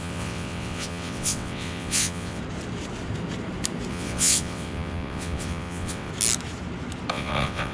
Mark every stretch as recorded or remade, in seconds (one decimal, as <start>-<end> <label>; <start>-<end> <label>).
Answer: 0.0-2.4 remade; 2.4-3.9 recorded; 3.9-6.1 remade; 6.1-7.1 recorded; 7.1-7.7 remade